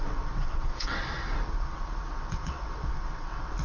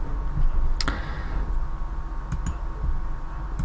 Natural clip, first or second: second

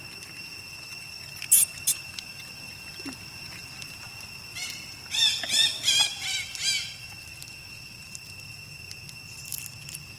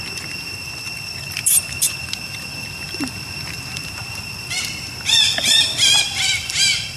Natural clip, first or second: first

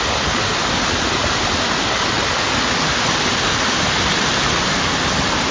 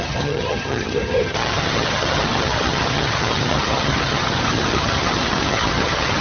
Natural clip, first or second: first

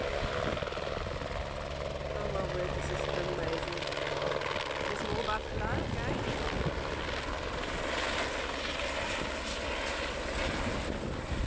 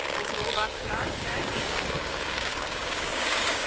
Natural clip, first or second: first